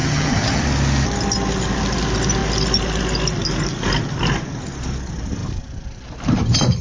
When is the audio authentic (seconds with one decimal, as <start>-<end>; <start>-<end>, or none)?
0.6-6.8